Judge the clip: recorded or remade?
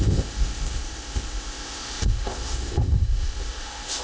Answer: remade